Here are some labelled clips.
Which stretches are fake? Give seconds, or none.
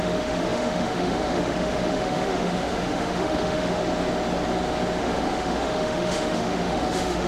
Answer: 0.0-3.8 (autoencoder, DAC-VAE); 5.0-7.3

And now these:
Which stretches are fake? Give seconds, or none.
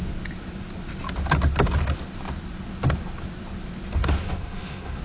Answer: 4.0-5.0 (autoencoder, DAC-VAE)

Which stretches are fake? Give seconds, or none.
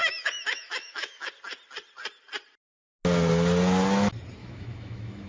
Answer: 0.0-1.3 (autoencoder, DAC-VAE); 4.4-5.3